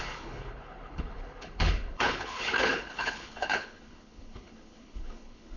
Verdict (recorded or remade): remade